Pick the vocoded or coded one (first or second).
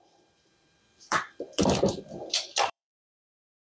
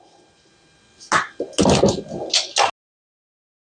first